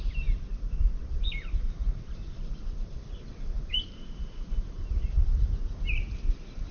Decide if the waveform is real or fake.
real